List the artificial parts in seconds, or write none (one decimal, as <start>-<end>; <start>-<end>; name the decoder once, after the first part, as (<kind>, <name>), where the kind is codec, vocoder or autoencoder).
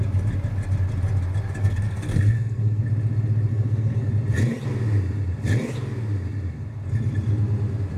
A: 1.6-2.8 (codec, SNAC); 3.5-4.1